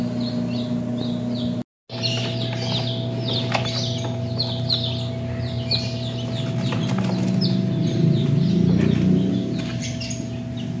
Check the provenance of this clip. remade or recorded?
recorded